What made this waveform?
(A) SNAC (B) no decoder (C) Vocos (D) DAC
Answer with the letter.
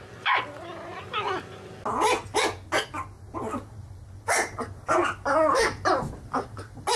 B